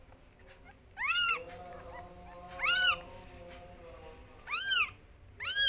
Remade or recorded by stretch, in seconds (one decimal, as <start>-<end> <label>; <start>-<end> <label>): 0.0-5.7 recorded